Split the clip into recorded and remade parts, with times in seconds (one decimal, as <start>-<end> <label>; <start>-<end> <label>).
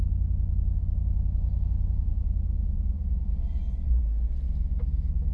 0.0-5.3 recorded